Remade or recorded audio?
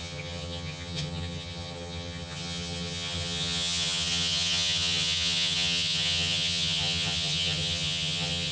remade